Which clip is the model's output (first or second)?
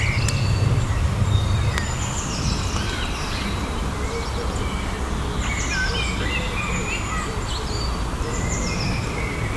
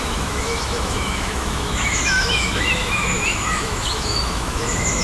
second